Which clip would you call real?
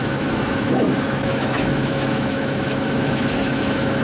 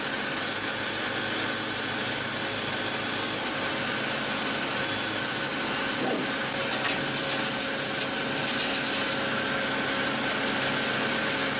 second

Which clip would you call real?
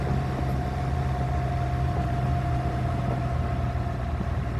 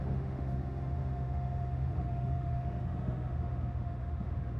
first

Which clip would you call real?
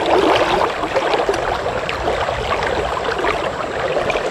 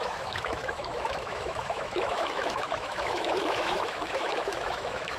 first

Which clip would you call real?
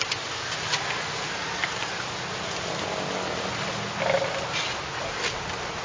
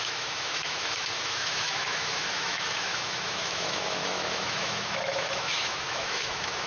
first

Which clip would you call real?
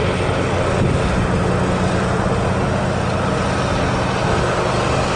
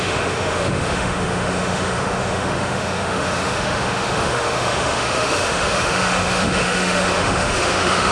first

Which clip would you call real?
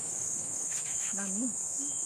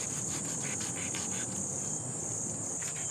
second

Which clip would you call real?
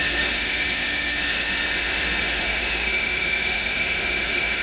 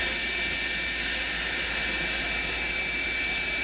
second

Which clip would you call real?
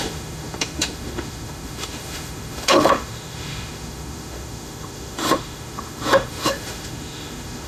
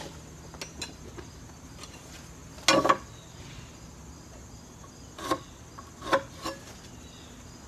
second